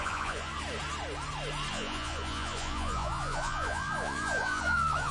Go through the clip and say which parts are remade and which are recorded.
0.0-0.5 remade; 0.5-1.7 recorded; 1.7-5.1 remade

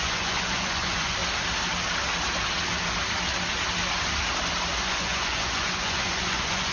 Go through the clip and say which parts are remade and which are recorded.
0.0-1.2 remade; 1.2-4.8 recorded; 4.8-6.7 remade

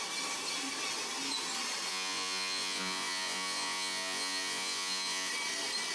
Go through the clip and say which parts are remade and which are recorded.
0.0-1.9 recorded; 1.9-5.3 remade; 5.3-5.9 recorded

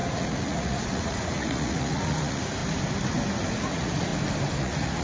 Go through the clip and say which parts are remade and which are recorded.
0.0-2.6 remade; 2.6-3.5 recorded; 3.5-4.1 remade; 4.1-4.6 recorded; 4.6-5.0 remade

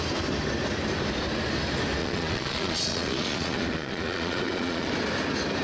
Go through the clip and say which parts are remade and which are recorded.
0.0-2.0 recorded; 2.0-4.9 remade; 4.9-5.6 recorded

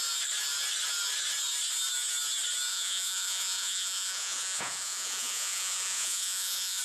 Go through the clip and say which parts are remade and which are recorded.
0.0-2.7 recorded; 2.7-6.8 remade